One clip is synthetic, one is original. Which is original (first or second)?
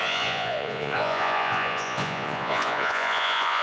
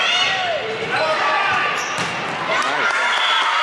second